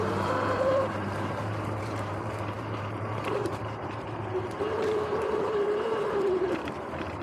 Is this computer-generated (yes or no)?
yes